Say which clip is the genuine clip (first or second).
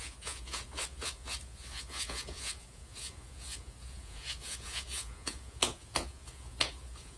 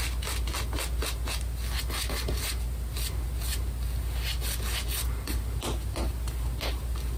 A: second